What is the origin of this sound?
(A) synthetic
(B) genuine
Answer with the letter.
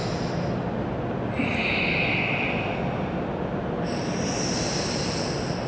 B